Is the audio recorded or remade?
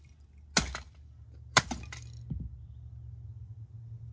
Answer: recorded